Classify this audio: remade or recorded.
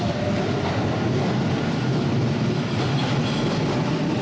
recorded